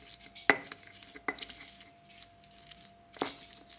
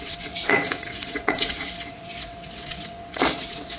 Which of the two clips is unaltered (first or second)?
first